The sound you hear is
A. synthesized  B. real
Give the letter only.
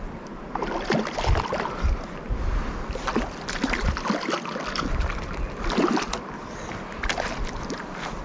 B